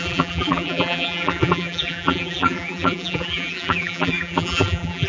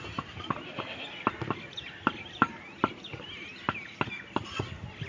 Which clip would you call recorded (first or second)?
second